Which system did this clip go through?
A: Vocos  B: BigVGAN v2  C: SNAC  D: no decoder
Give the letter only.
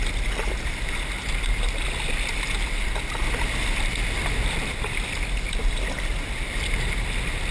D